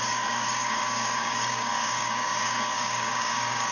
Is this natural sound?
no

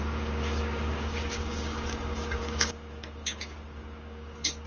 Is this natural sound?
no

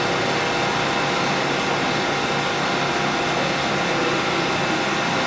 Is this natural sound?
yes